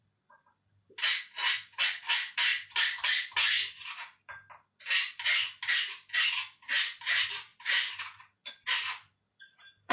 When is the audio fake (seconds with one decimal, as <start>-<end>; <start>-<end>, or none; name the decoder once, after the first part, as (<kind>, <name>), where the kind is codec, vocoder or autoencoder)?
0.0-2.5 (vocoder, BigVGAN v2); 7.0-9.9